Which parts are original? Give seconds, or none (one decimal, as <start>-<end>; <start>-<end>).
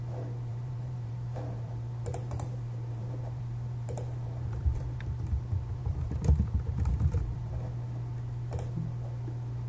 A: 0.0-0.5; 5.0-5.8; 7.5-9.7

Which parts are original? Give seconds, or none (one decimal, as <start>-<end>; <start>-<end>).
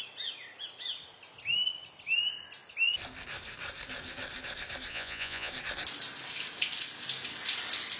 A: 0.0-4.9; 5.5-8.0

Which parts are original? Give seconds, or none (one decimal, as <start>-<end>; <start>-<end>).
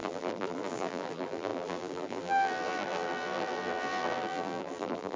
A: none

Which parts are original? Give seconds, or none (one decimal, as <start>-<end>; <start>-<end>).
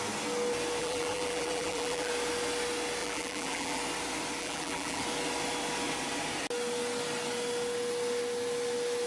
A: 0.0-0.8; 2.1-3.0; 3.8-4.4; 5.0-9.1